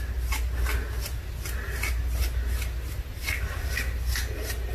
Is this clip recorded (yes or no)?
yes